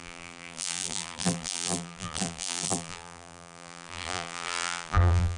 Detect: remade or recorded remade